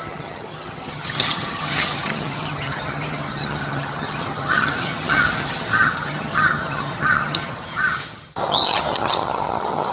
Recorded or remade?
remade